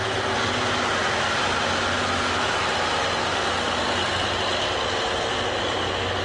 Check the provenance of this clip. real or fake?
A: real